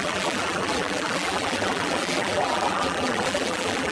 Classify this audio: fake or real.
fake